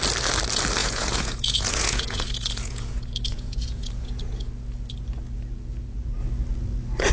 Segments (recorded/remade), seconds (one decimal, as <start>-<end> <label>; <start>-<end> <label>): 0.0-0.8 recorded; 0.8-4.5 remade; 4.5-7.1 recorded